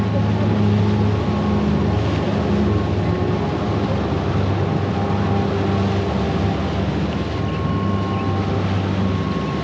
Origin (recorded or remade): recorded